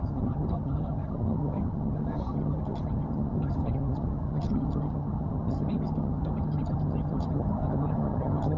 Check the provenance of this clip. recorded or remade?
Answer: remade